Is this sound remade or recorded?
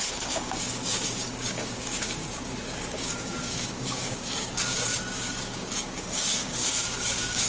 remade